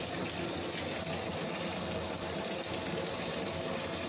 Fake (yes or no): no